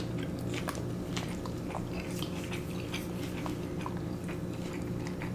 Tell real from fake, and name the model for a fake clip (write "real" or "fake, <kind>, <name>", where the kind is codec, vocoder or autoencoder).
real